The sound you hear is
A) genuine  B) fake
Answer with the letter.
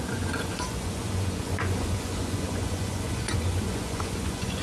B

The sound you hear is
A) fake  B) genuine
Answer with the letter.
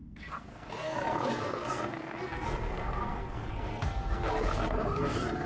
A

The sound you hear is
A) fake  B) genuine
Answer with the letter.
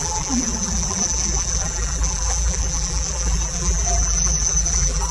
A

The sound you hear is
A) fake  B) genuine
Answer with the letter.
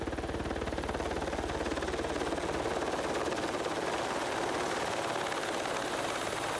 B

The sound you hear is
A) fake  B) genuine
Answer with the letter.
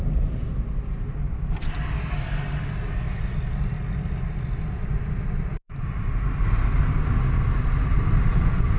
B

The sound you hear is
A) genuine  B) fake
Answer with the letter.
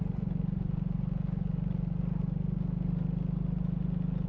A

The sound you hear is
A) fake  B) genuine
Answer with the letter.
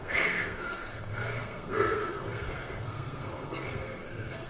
A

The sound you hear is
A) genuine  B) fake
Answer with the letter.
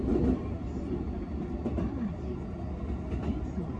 A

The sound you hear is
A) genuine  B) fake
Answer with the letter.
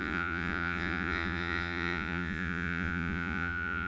B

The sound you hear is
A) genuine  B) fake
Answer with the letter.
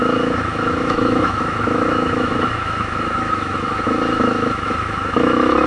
B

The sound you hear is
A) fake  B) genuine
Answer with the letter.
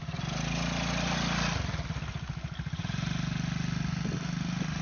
B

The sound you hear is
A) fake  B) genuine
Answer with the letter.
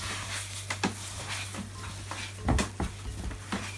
B